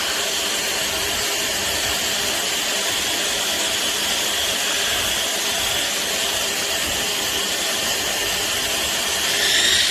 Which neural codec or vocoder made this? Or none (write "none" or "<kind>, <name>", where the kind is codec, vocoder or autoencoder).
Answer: vocoder, BigVGAN v2